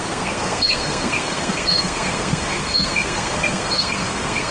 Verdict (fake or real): fake